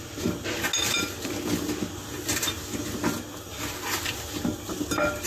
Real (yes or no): yes